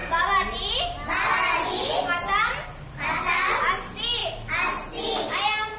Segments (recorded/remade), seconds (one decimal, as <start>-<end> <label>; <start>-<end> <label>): 0.0-5.8 recorded